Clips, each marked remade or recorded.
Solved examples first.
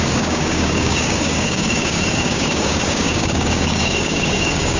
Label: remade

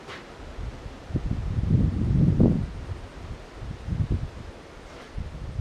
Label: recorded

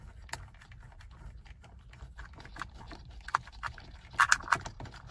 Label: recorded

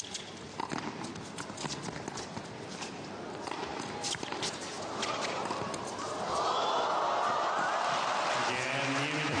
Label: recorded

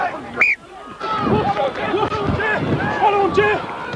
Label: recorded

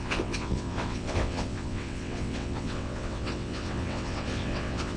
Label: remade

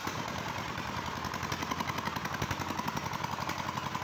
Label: recorded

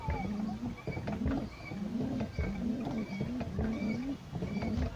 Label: recorded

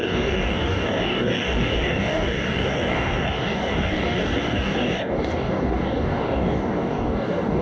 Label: remade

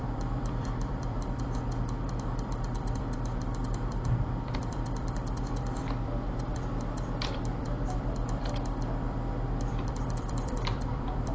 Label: remade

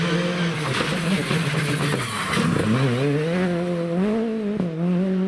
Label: recorded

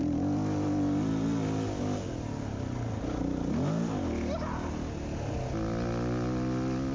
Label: recorded